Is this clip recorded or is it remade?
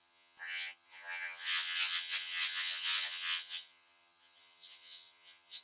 remade